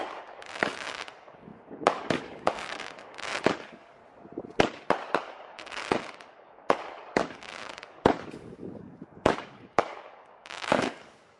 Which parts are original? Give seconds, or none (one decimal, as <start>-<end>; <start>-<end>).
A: 4.0-5.2